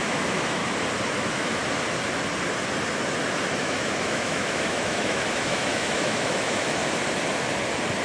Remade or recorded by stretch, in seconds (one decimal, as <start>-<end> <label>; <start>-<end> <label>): 0.0-0.6 remade; 0.6-1.2 recorded; 1.2-1.6 remade; 1.6-3.6 recorded; 3.6-6.8 remade; 6.8-8.0 recorded